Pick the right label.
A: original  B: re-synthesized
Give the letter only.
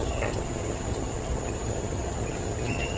B